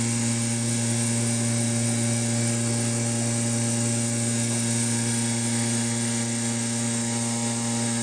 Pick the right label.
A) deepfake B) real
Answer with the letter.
B